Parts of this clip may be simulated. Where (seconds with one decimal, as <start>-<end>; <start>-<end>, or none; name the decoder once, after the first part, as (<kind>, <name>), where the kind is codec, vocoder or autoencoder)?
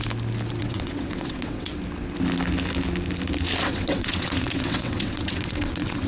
0.6-1.7 (vocoder, WaveNeXt); 3.6-6.1